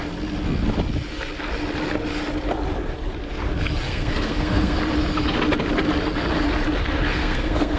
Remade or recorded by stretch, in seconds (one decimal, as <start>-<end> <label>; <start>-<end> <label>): 0.0-3.9 recorded; 3.9-4.8 remade; 4.8-7.1 recorded; 7.1-7.8 remade